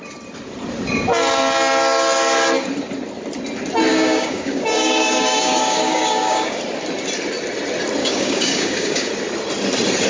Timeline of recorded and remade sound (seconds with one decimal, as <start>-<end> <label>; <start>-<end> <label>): 0.0-3.9 recorded; 3.9-6.6 remade; 6.6-8.0 recorded; 8.0-9.1 remade; 9.1-10.1 recorded